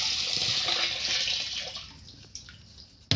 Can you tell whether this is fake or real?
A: real